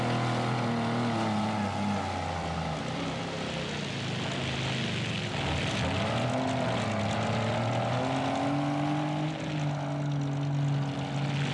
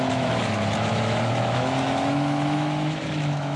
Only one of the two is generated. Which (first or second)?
second